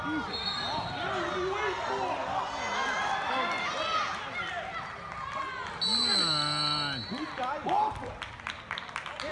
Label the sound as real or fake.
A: real